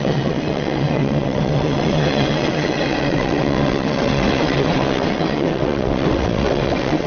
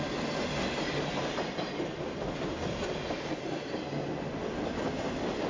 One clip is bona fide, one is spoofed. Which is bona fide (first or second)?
second